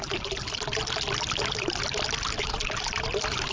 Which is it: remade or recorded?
remade